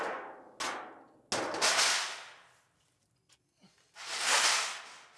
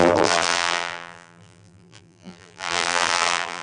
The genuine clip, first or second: first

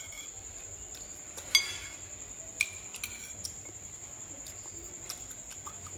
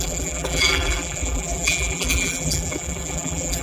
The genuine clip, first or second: first